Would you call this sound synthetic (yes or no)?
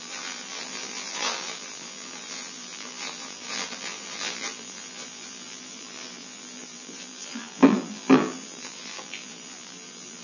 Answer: yes